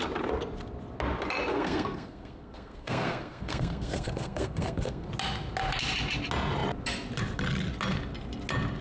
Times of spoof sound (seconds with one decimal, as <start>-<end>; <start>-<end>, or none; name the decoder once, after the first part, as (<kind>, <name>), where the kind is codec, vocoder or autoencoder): 1.5-5.0 (codec, SNAC)